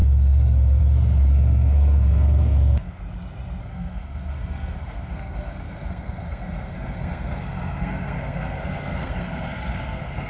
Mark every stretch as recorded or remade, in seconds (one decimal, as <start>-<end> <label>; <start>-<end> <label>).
0.0-3.0 remade; 3.0-3.6 recorded; 3.6-10.3 remade